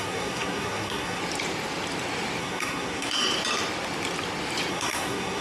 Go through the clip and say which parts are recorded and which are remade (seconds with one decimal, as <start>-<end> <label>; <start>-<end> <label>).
0.0-1.2 remade; 1.2-2.4 recorded; 2.4-3.2 remade; 3.2-4.7 recorded; 4.7-5.4 remade